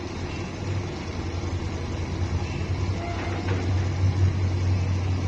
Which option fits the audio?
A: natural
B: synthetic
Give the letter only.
A